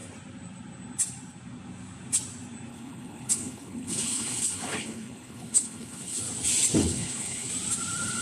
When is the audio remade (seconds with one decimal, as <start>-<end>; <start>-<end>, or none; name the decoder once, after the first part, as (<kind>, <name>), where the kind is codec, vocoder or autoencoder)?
2.7-6.2 (codec, HILCodec); 6.8-7.5